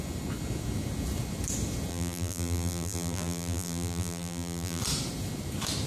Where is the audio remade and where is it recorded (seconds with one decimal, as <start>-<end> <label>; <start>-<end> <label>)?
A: 0.0-1.9 recorded; 1.9-4.8 remade; 4.8-5.9 recorded